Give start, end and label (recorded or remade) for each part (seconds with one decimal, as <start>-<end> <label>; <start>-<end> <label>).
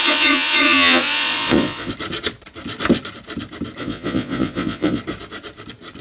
0.0-1.9 remade; 1.9-3.8 recorded; 3.8-5.0 remade; 5.0-6.0 recorded